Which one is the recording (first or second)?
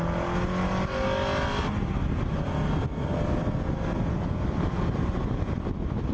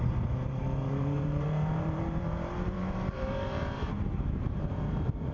first